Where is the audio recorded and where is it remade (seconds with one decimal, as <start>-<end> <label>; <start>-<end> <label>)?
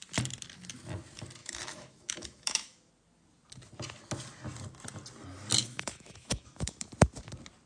0.0-1.4 recorded; 1.4-2.9 remade; 2.9-5.6 recorded; 5.6-6.9 remade; 6.9-7.7 recorded